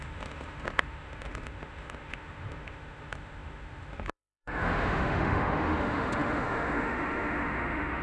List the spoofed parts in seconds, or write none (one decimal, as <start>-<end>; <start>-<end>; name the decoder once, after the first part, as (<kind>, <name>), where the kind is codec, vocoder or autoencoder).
0.0-8.0 (autoencoder, DAC-VAE)

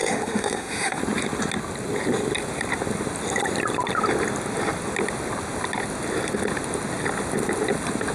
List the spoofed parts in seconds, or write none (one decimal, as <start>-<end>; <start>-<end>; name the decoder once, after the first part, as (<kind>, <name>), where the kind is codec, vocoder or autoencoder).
0.0-1.0 (autoencoder, DAC-VAE)

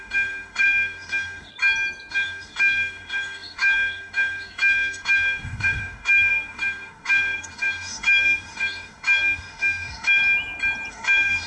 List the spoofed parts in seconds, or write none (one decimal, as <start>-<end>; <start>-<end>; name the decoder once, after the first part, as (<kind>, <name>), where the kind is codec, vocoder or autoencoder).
0.0-1.5 (autoencoder, DAC-VAE); 2.1-10.2; 10.9-11.5

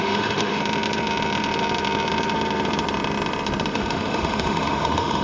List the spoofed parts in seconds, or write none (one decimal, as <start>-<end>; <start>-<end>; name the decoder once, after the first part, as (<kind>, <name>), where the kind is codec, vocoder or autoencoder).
0.0-0.6 (autoencoder, DAC-VAE); 3.7-5.2

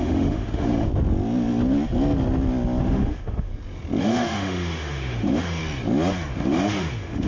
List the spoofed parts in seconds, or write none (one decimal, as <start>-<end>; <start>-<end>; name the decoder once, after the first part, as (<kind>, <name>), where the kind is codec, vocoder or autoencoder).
0.0-0.9 (autoencoder, DAC-VAE); 2.8-3.5; 4.0-5.6; 6.3-7.3

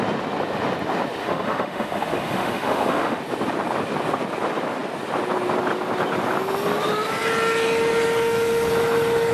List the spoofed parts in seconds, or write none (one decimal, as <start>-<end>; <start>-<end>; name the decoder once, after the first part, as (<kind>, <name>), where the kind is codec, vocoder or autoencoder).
1.2-3.2 (autoencoder, DAC-VAE)